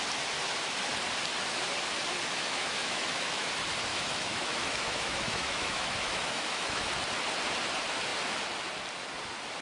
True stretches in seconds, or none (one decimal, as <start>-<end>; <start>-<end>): 0.0-2.3; 3.5-3.9; 6.9-9.6